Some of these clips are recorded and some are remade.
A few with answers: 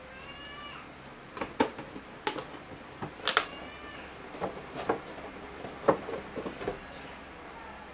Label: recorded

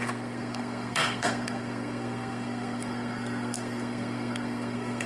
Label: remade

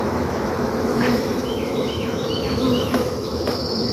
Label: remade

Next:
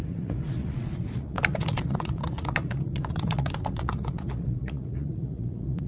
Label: remade